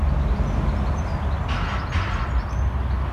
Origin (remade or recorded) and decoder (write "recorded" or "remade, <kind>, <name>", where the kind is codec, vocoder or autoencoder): recorded